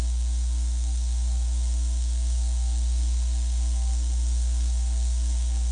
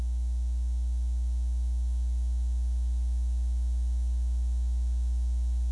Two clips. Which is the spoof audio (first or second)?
first